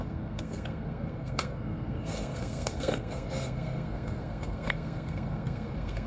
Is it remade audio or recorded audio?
remade